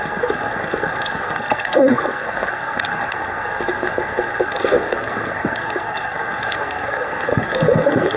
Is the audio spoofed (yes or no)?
yes